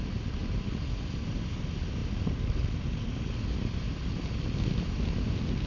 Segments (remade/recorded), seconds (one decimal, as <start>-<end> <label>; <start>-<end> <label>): 0.0-5.7 recorded